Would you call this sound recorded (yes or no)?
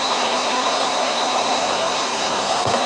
no